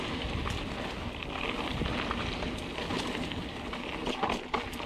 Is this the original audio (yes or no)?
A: yes